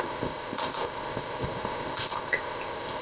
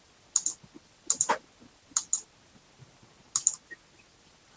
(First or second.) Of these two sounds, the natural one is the second